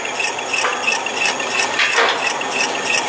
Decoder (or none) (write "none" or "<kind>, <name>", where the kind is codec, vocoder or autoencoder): none